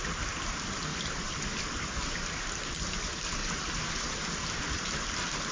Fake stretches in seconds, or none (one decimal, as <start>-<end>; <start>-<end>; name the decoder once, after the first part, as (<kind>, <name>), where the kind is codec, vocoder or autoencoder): 0.9-2.8 (vocoder, BigVGAN v2); 3.4-4.6